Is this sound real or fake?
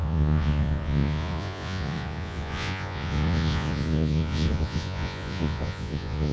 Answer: fake